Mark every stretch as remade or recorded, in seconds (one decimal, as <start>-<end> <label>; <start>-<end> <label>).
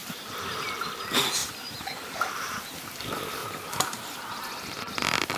0.0-0.7 remade; 0.7-1.4 recorded; 1.4-3.0 remade; 3.0-3.4 recorded; 3.4-4.3 remade; 4.3-5.4 recorded